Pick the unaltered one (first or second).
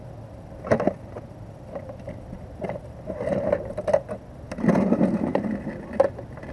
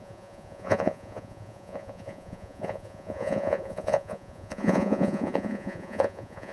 first